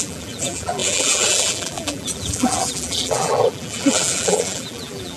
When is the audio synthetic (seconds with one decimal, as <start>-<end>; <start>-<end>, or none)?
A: 0.0-5.2